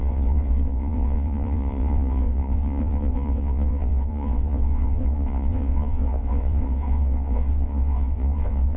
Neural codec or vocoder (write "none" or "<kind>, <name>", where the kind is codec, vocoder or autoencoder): vocoder, WaveNeXt